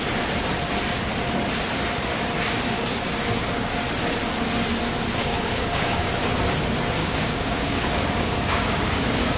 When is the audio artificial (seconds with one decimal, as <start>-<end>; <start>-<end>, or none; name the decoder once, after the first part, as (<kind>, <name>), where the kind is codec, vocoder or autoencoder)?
5.2-6.0 (codec, DAC); 7.0-9.4